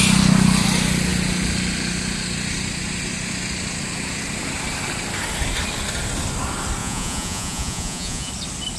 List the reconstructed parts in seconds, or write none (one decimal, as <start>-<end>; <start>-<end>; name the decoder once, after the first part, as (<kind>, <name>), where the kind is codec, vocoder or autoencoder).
6.8-8.3 (vocoder, Vocos)